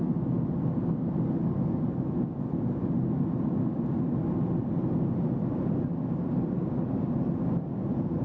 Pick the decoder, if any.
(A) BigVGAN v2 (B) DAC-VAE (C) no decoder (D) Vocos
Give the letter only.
C